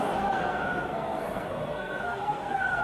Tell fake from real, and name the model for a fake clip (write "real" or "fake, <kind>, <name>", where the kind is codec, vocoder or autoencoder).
fake, codec, SNAC